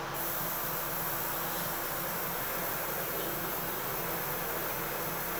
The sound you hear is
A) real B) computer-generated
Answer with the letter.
A